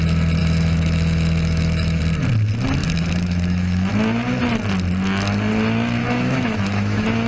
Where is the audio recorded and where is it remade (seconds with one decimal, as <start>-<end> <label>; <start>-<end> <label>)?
0.0-0.4 recorded; 0.4-2.0 remade; 2.0-2.8 recorded; 2.8-3.9 remade; 3.9-6.0 recorded; 6.0-7.3 remade